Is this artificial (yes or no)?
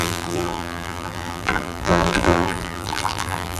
yes